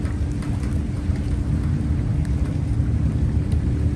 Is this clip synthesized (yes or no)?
no